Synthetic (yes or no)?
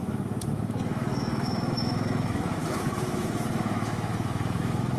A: yes